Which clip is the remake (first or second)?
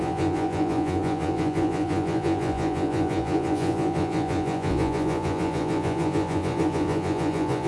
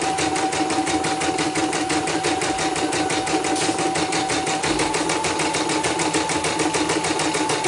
first